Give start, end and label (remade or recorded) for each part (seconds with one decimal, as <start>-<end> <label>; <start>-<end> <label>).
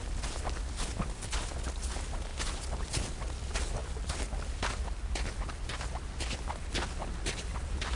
0.0-8.0 recorded